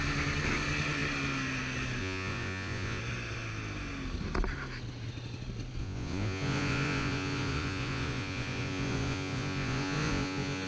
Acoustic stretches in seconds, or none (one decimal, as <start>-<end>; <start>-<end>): 0.0-2.0; 3.0-5.8